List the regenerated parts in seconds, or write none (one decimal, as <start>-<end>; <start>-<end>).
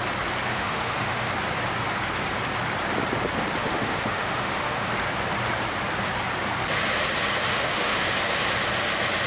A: 0.5-1.3; 3.6-4.9; 7.5-8.1